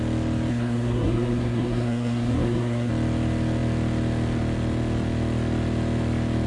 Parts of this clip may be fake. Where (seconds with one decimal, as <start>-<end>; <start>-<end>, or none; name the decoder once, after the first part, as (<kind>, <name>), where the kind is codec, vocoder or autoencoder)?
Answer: 0.5-2.9 (codec, SNAC)